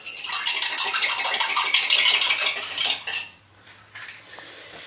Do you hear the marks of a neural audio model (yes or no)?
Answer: no